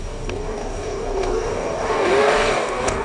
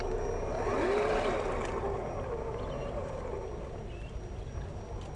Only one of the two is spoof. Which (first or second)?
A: first